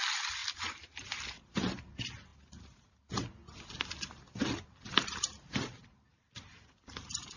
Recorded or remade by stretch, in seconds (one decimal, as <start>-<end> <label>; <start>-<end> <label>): 0.0-7.4 recorded